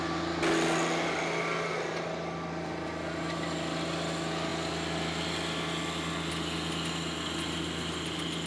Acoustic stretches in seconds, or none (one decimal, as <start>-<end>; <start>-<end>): 0.0-8.5